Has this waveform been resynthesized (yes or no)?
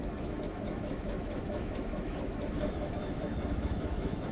yes